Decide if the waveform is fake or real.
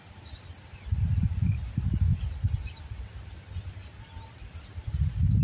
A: real